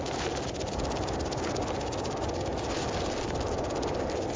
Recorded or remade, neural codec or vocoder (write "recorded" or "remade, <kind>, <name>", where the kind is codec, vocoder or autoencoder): recorded